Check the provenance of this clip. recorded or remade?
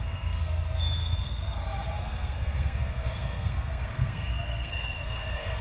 remade